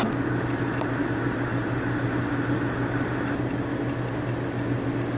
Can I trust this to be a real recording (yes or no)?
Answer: yes